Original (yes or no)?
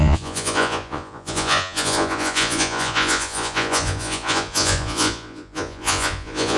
no